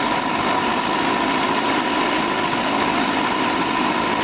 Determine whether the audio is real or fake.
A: real